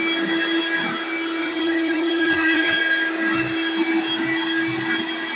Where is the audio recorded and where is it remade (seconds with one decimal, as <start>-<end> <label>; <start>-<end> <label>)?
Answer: 0.0-1.4 recorded; 1.4-2.8 remade; 2.8-5.4 recorded